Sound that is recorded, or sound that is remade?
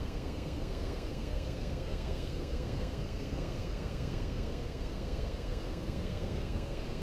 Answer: remade